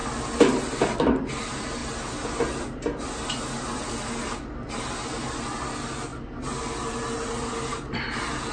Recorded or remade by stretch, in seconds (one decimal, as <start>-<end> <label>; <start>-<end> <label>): 0.0-8.5 recorded